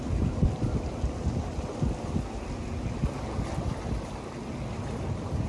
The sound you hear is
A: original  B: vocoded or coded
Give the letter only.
A